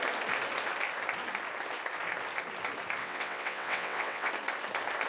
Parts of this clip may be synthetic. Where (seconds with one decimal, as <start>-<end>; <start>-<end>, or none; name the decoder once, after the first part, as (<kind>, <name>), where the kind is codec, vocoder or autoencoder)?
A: 3.0-4.3 (vocoder, WaveNeXt)